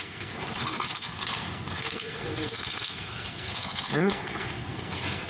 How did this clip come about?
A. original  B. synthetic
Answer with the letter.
B